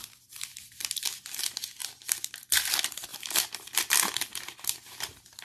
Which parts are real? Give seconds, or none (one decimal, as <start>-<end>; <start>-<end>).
0.5-1.4